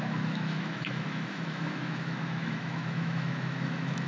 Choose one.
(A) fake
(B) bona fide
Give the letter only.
A